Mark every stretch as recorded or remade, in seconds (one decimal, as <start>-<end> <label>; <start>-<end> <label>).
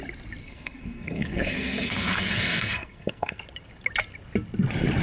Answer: 0.0-0.4 recorded; 0.4-3.4 remade; 3.4-5.0 recorded